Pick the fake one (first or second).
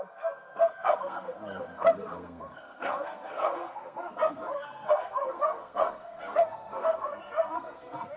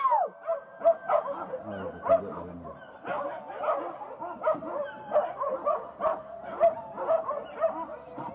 first